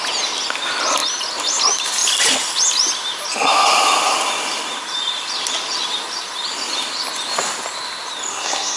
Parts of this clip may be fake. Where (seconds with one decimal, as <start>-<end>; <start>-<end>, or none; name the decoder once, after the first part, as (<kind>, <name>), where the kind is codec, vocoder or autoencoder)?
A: 8.3-8.8 (codec, SNAC)